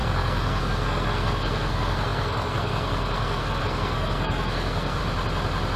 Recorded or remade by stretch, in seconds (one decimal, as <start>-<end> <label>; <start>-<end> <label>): 0.0-5.0 remade; 5.0-5.8 recorded